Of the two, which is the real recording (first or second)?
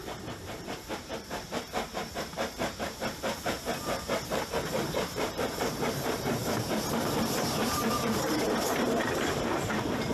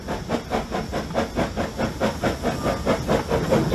second